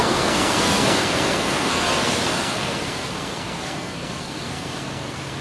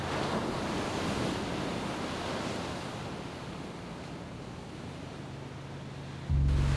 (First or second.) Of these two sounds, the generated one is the first